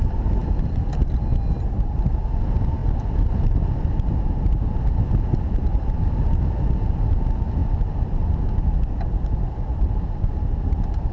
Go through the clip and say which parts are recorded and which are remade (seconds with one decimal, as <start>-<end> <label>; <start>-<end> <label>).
0.0-11.1 recorded